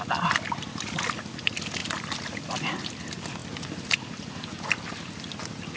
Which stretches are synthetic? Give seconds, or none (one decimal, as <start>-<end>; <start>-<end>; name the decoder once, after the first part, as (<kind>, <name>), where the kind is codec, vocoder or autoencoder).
none